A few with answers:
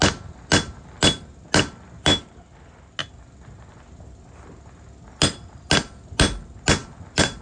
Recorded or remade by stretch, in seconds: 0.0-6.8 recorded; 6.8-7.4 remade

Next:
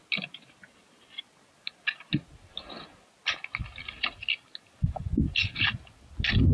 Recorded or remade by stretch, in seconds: 0.0-6.5 recorded

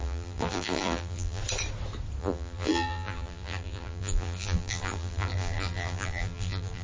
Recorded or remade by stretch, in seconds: 0.0-1.4 remade; 1.4-2.2 recorded; 2.2-6.8 remade